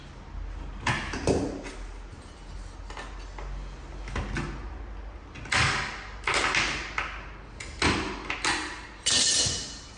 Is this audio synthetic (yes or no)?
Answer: no